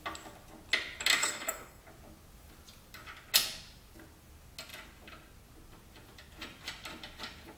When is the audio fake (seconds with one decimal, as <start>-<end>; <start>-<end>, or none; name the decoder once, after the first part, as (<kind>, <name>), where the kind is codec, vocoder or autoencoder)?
1.2-1.8 (codec, SNAC)